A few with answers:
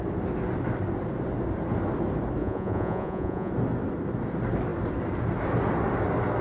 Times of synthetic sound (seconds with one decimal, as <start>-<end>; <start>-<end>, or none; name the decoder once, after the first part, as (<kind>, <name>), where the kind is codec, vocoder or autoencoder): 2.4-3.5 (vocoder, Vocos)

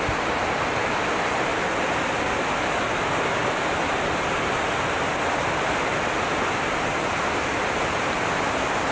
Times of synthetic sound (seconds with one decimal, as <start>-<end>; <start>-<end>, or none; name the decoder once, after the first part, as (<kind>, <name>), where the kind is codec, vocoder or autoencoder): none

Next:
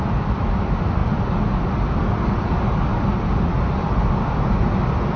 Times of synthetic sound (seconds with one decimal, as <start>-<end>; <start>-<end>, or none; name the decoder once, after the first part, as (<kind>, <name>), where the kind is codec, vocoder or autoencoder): none

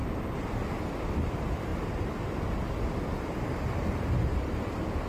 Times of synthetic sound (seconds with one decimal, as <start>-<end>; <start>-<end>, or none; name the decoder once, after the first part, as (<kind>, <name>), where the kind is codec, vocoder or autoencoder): 0.0-1.7 (vocoder, BigVGAN v2)

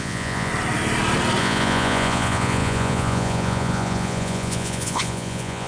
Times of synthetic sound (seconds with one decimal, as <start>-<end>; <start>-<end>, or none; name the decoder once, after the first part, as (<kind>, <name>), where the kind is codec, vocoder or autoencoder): 0.0-0.5 (vocoder, Vocos); 1.4-5.7

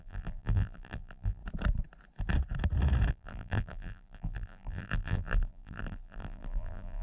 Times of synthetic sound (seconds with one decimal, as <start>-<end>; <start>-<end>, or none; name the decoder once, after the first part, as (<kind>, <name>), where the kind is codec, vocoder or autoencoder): 0.0-1.4 (vocoder, BigVGAN v2); 3.1-7.0

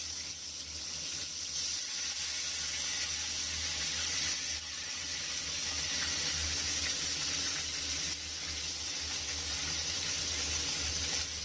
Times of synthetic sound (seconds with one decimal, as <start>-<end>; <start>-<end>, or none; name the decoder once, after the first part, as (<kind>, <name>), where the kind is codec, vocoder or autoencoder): none

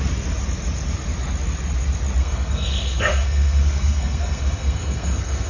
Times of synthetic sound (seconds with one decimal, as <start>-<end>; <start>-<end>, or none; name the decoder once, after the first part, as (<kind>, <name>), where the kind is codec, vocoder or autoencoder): 2.2-5.5 (codec, SNAC)